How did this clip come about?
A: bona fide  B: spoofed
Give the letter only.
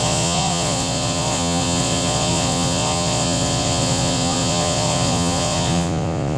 B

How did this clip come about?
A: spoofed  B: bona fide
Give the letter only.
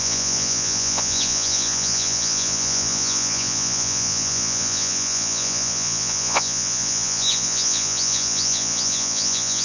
A